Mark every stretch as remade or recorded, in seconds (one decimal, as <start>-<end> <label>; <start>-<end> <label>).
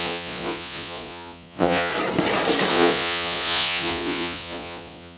0.0-1.9 remade; 1.9-2.7 recorded; 2.7-5.2 remade